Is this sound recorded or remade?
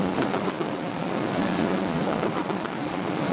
remade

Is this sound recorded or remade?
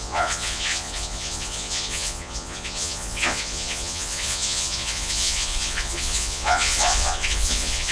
remade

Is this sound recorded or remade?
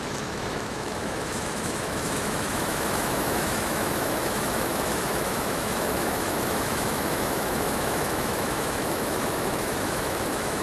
remade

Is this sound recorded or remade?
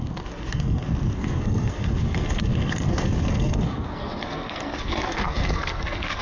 remade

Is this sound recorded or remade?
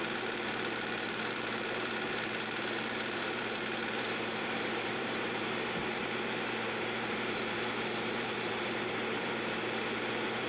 remade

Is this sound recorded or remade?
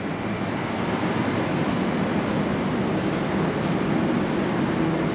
recorded